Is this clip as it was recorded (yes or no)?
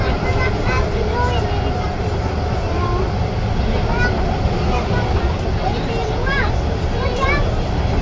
yes